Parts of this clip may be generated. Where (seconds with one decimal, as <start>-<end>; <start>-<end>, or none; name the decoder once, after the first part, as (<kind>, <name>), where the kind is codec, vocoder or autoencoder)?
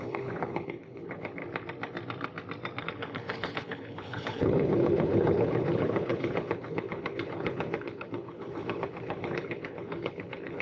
0.0-1.4 (codec, HILCodec); 2.8-10.6